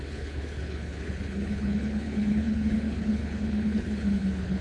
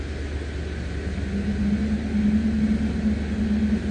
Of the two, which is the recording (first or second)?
second